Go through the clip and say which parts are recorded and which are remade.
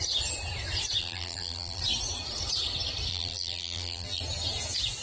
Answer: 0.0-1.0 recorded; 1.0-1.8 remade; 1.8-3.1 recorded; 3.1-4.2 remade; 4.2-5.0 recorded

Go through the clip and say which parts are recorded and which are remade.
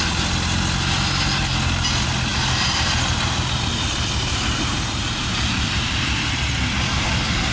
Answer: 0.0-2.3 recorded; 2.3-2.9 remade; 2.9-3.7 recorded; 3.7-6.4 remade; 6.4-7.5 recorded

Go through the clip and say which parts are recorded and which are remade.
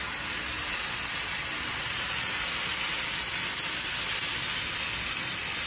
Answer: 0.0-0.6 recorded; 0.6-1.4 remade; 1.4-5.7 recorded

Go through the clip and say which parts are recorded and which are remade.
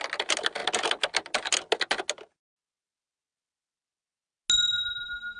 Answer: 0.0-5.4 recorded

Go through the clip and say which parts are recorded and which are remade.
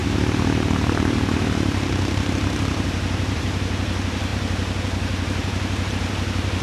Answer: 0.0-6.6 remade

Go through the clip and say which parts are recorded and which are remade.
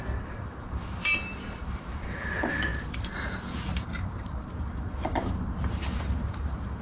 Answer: 0.0-6.8 remade